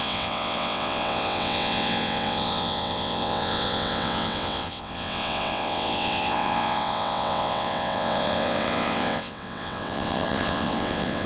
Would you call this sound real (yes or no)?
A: no